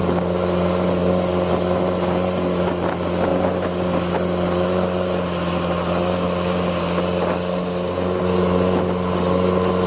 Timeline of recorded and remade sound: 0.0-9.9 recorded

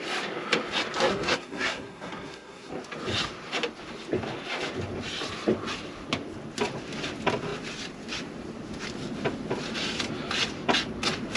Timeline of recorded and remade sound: 0.0-1.1 recorded; 1.1-2.7 remade; 2.7-11.4 recorded

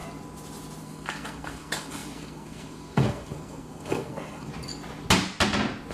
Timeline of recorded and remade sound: 0.0-0.8 recorded; 0.8-4.5 remade; 4.5-5.9 recorded

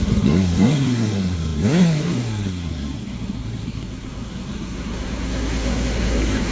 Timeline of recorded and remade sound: 0.0-6.5 remade

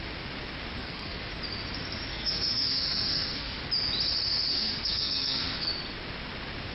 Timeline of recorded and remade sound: 0.0-0.8 recorded; 0.8-1.3 remade; 1.3-2.1 recorded; 2.1-3.6 remade; 3.6-4.5 recorded; 4.5-5.7 remade; 5.7-6.7 recorded

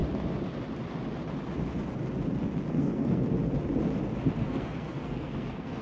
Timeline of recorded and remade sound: 0.0-2.7 recorded; 2.7-3.2 remade; 3.2-4.4 recorded; 4.4-5.8 remade

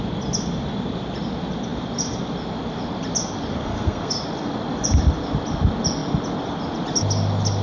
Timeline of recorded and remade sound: 0.0-3.5 recorded; 3.5-4.1 remade; 4.1-7.6 recorded

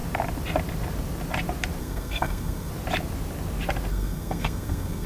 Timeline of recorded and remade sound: 0.0-1.8 recorded; 1.8-2.7 remade; 2.7-3.9 recorded; 3.9-5.1 remade